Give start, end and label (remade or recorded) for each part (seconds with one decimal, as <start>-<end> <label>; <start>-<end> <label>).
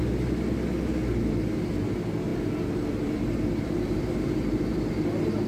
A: 0.0-2.3 recorded; 2.3-4.9 remade; 4.9-5.5 recorded